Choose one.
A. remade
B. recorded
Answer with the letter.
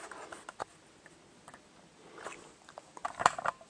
B